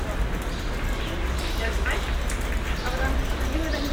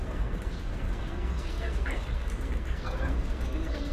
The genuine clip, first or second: first